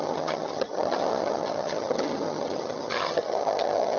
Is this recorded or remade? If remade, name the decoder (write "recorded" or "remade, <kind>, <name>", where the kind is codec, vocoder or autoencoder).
remade, vocoder, HiFi-GAN